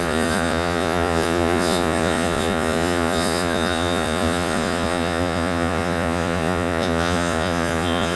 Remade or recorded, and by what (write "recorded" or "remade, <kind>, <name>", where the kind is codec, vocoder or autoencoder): remade, vocoder, Vocos